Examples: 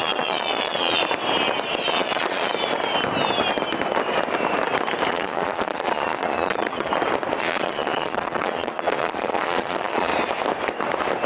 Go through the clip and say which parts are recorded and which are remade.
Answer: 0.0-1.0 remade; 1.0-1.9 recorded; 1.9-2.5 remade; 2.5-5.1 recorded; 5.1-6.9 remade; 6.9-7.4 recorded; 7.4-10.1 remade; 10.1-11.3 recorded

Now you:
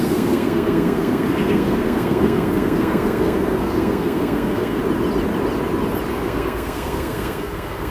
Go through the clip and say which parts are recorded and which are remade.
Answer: 0.0-4.8 remade; 4.8-6.1 recorded; 6.1-7.9 remade